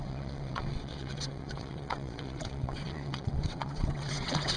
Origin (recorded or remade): remade